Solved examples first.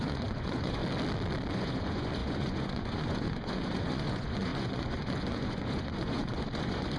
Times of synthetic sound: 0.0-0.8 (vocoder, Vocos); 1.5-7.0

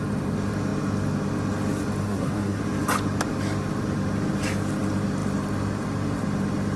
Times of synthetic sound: 2.0-2.6 (codec, SNAC)

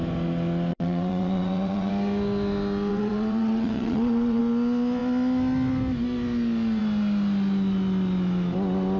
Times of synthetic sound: 0.7-1.9 (vocoder, WaveNeXt); 2.9-4.4

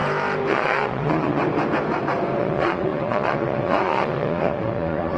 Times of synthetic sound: 0.5-1.4 (vocoder, Vocos); 2.4-5.2